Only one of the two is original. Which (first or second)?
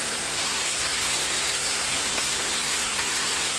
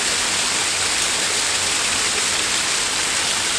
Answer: second